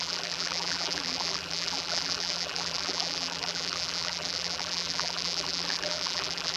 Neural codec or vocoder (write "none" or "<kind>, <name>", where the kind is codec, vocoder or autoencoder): vocoder, BigVGAN v2